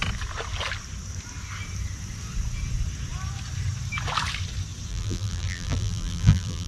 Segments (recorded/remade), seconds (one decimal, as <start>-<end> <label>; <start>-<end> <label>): 0.0-4.9 recorded; 4.9-6.7 remade